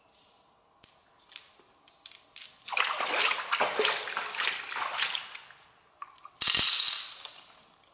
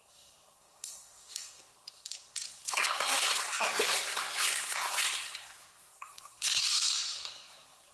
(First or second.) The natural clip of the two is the first